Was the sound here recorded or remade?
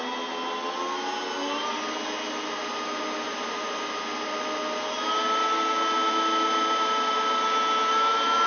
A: recorded